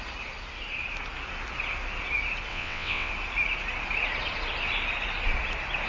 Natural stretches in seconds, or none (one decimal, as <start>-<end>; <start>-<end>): 0.0-2.5; 3.1-5.9